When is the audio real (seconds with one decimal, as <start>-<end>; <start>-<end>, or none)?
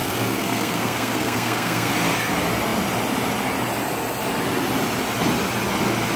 1.9-6.2